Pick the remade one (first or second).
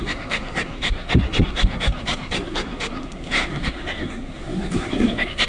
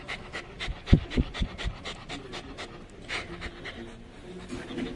first